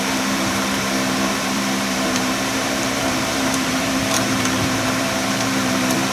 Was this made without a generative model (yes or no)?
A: no